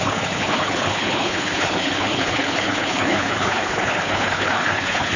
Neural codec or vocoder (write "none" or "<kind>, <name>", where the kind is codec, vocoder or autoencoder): codec, HILCodec